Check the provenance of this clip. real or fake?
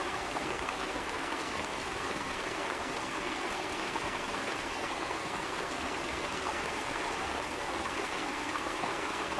fake